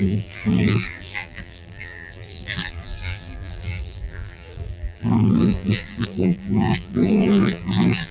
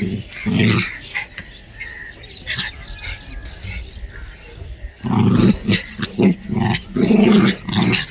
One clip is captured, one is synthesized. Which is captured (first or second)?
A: second